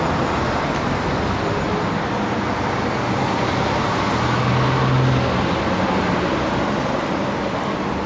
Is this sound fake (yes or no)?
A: no